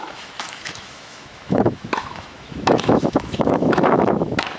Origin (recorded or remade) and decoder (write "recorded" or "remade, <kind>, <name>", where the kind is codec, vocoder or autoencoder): remade, autoencoder, DAC-VAE